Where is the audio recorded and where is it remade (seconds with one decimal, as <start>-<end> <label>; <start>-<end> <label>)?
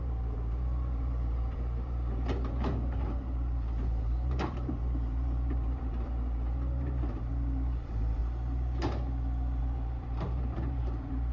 0.0-8.2 remade; 8.2-9.6 recorded; 9.6-11.3 remade